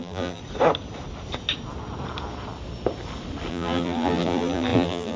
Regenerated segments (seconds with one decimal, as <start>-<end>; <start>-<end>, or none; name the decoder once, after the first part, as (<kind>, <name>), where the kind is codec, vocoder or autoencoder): 0.0-0.4 (vocoder, BigVGAN v2); 3.5-5.2